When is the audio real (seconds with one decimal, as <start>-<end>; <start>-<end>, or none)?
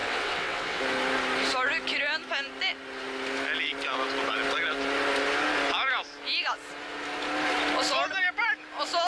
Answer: 0.8-9.1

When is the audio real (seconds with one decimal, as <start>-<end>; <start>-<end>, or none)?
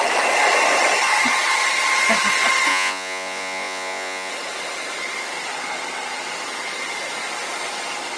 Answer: 0.0-2.7; 4.3-8.2